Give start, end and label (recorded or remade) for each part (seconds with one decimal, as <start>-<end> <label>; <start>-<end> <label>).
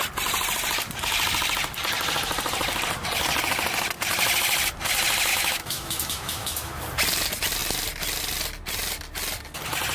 0.0-5.3 recorded; 5.3-6.8 remade; 6.8-9.9 recorded